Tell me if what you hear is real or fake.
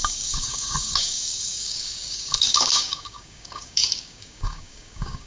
fake